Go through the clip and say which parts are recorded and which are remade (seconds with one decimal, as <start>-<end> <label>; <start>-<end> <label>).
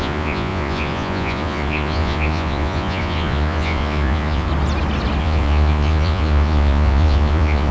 0.0-4.5 remade; 4.5-5.2 recorded; 5.2-7.7 remade